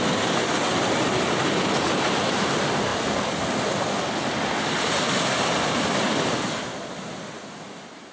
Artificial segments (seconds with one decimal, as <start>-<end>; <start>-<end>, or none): none